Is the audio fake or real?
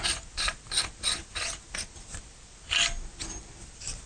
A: real